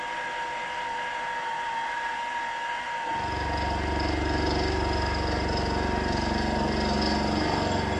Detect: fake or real real